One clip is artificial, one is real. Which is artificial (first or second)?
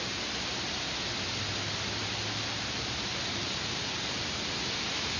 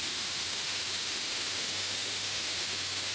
second